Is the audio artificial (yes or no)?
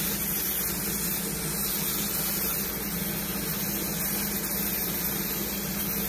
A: no